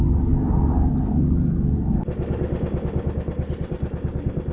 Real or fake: real